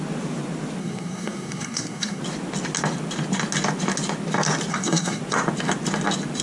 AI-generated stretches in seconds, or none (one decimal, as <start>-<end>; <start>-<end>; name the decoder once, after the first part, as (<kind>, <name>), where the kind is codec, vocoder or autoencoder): 0.8-2.2 (codec, SNAC); 4.7-5.2